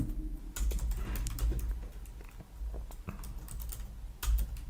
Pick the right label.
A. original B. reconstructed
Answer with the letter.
A